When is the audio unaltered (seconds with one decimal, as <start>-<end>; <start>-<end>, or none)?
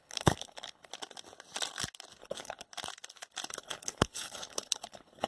0.9-2.2; 2.7-3.5